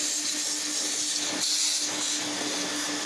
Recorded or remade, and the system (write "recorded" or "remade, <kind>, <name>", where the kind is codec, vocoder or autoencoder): recorded